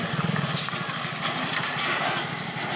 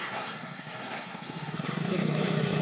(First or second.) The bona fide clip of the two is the first